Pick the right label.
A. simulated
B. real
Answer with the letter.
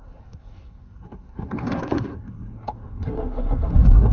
A